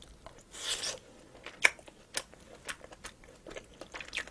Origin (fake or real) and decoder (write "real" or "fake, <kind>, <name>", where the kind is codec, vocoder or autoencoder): real